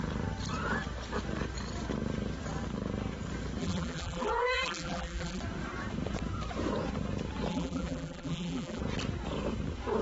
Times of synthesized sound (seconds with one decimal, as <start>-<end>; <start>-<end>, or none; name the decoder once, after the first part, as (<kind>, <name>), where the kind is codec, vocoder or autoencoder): 3.6-5.4 (vocoder, BigVGAN v2); 7.5-8.8